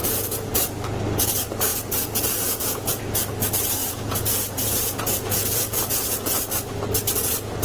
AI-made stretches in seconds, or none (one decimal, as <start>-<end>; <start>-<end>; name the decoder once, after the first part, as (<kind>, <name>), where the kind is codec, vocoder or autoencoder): 0.0-0.5 (vocoder, Vocos); 1.7-3.0; 3.8-6.3